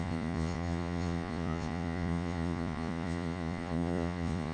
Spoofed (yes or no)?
yes